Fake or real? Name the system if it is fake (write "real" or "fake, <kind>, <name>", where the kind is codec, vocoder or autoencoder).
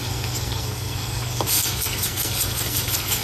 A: fake, codec, SNAC